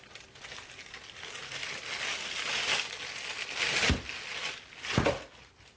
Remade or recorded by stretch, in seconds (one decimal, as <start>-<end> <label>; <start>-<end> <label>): 0.0-5.8 recorded